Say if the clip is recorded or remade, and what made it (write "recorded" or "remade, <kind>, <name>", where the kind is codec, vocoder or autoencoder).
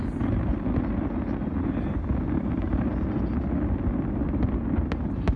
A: recorded